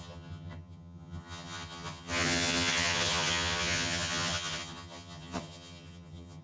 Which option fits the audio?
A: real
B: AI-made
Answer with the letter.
B